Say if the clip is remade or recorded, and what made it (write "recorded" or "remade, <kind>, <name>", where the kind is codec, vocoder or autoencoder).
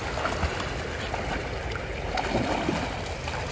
recorded